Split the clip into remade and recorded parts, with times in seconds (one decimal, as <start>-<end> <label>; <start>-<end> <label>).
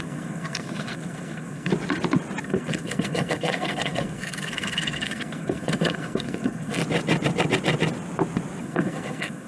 0.0-1.7 remade; 1.7-2.4 recorded; 2.4-6.8 remade; 6.8-8.6 recorded; 8.6-9.5 remade